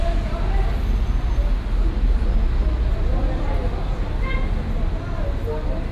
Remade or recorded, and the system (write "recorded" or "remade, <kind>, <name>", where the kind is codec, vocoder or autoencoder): recorded